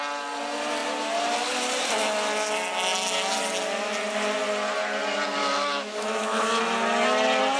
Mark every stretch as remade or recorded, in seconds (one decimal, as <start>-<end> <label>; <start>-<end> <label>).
0.0-5.4 recorded; 5.4-6.6 remade; 6.6-7.6 recorded